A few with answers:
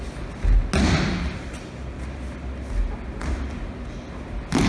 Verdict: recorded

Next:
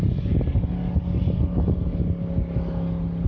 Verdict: recorded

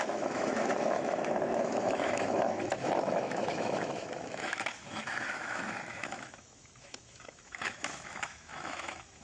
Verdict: remade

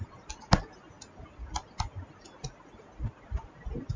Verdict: recorded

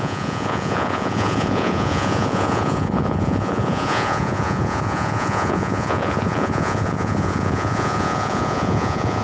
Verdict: remade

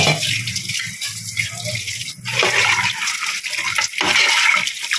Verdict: recorded